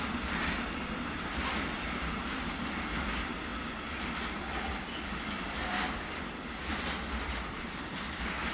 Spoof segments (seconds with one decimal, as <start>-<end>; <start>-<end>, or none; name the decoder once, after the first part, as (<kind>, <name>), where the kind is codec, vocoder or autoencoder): none